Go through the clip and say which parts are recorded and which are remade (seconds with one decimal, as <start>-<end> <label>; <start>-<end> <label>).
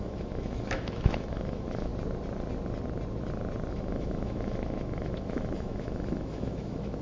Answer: 0.0-1.9 remade; 1.9-3.7 recorded; 3.7-7.0 remade